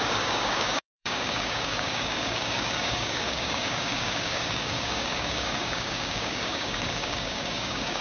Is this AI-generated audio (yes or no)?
yes